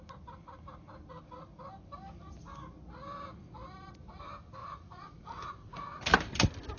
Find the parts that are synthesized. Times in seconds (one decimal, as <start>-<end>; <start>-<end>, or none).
4.6-6.0